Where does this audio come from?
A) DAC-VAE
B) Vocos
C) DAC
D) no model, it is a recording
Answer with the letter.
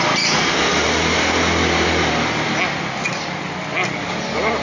D